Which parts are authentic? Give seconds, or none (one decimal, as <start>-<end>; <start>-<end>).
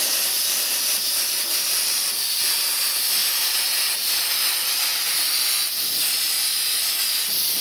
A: 0.0-1.1; 2.0-7.6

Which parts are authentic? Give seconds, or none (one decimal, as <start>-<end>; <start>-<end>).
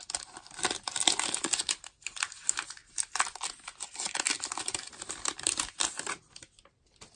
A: 0.0-7.2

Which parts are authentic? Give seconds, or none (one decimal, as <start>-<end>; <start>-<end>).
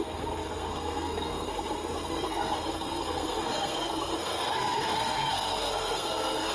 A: none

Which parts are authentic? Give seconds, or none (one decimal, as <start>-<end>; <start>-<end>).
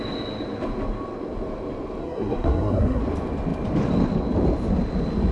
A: 0.0-2.0; 3.0-5.3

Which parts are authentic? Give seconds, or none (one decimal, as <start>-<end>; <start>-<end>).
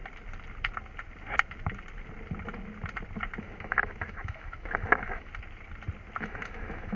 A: 0.0-3.4; 5.3-6.2